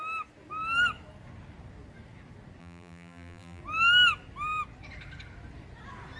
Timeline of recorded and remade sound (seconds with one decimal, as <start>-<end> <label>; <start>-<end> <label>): 0.0-2.6 recorded; 2.6-3.6 remade; 3.6-6.2 recorded